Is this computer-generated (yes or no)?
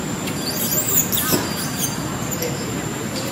yes